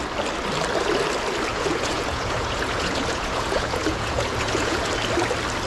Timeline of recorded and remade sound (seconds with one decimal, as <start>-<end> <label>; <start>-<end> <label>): 0.0-1.5 recorded; 1.5-4.9 remade; 4.9-5.7 recorded